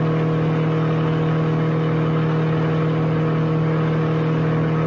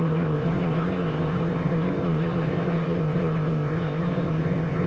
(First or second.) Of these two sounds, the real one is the first